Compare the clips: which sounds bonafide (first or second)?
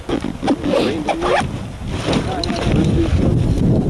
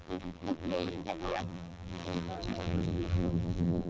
first